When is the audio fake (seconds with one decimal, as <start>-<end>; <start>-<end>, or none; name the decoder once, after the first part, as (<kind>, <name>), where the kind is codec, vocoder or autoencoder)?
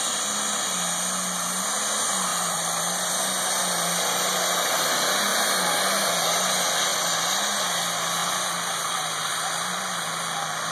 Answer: 2.3-3.2 (vocoder, BigVGAN v2); 5.3-5.8; 8.2-9.9